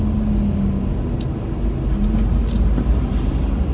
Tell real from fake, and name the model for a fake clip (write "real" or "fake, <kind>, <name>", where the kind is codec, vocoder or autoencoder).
real